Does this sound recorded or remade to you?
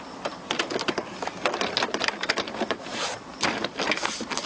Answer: recorded